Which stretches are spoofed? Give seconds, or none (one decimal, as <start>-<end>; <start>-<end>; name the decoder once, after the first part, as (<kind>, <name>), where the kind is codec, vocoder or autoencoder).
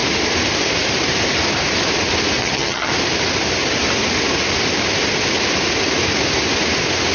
2.4-2.9 (vocoder, HiFi-GAN)